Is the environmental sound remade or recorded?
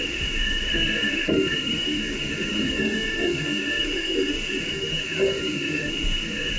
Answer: remade